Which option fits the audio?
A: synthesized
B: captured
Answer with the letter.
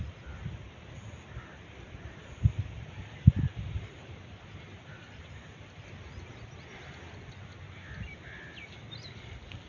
B